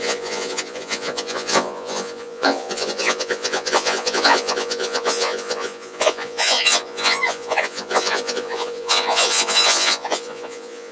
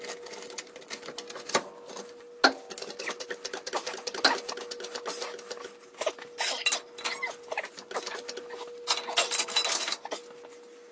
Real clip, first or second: second